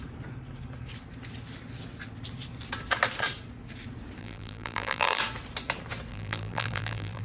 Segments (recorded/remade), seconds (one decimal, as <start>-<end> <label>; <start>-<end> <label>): 0.0-4.2 recorded; 4.2-5.2 remade; 5.2-6.1 recorded; 6.1-7.2 remade